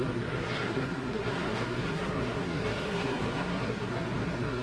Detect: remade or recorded remade